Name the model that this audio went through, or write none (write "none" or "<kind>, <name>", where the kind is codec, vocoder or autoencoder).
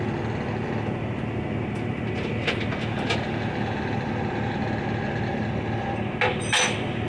none